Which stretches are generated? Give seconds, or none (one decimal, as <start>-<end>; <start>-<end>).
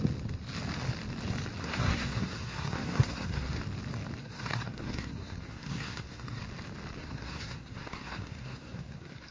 1.6-3.6; 4.2-6.4; 7.0-9.3